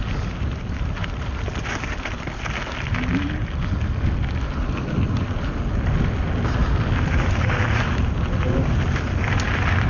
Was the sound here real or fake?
real